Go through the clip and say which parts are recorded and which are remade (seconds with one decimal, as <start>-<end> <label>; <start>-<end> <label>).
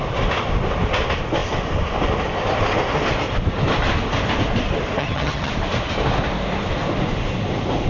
0.0-5.0 recorded; 5.0-5.5 remade; 5.5-7.9 recorded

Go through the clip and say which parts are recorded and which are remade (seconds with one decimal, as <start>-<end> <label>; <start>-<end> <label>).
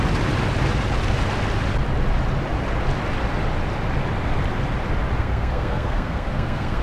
0.0-5.2 recorded; 5.2-6.8 remade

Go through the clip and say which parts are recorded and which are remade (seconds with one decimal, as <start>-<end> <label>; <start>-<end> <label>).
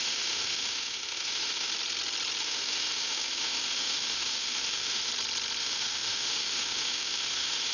0.0-1.7 remade; 1.7-2.4 recorded; 2.4-5.1 remade; 5.1-5.6 recorded; 5.6-7.7 remade